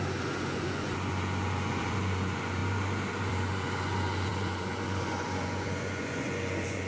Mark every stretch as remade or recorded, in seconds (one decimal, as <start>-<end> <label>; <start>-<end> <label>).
0.0-2.6 remade; 2.6-3.3 recorded; 3.3-6.9 remade